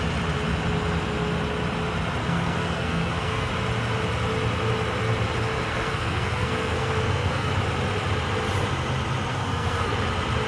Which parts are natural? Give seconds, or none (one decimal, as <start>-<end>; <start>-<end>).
0.0-2.2; 3.5-5.7; 7.5-9.3; 9.9-10.5